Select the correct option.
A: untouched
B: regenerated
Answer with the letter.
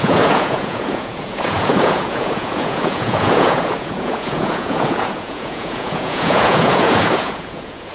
B